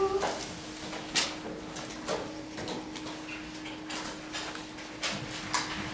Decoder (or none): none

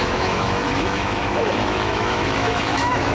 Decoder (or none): autoencoder, DAC-VAE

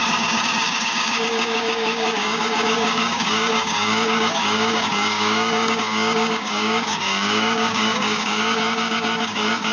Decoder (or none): codec, DAC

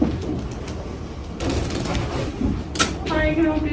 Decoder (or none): none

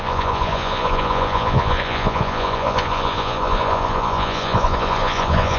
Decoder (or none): vocoder, Vocos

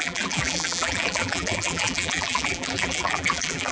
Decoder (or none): vocoder, BigVGAN v2